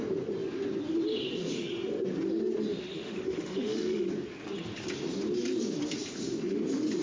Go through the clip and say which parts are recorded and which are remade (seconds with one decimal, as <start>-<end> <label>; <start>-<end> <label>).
0.0-2.7 recorded; 2.7-4.1 remade; 4.1-7.0 recorded